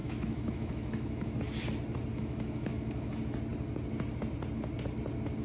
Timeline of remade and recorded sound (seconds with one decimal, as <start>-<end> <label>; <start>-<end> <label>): 0.0-1.4 remade; 1.4-2.1 recorded; 2.1-3.1 remade; 3.1-5.4 recorded